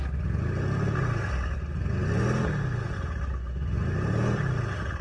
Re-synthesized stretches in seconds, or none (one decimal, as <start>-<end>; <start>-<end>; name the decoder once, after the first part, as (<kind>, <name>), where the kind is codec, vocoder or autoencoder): none